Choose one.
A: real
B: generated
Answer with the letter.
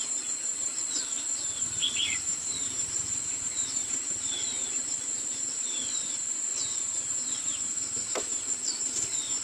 B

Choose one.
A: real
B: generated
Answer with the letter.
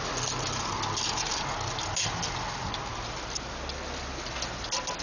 A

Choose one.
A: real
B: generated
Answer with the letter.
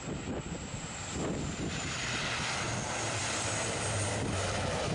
B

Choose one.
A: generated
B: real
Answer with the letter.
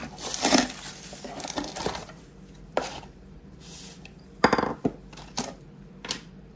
A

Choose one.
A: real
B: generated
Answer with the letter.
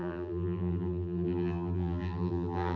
B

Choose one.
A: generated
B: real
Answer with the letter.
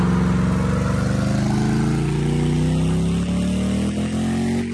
B